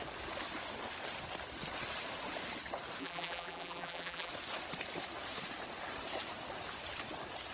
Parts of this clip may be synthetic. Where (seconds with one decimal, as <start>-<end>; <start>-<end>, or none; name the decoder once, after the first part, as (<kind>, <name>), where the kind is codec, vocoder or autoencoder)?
3.0-4.3 (vocoder, BigVGAN v2)